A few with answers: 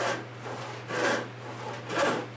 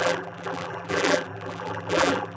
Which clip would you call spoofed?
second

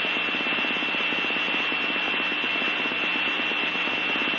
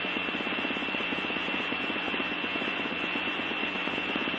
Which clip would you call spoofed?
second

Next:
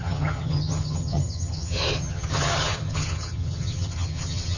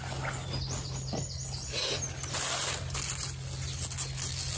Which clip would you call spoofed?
first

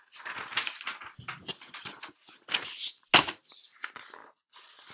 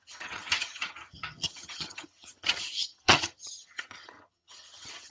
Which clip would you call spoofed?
second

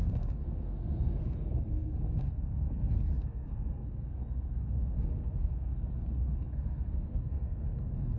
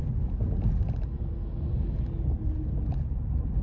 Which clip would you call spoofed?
first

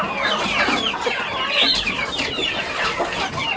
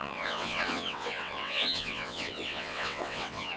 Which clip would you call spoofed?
second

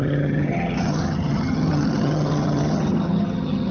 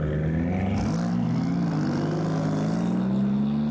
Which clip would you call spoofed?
first